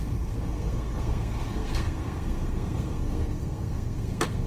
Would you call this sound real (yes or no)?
no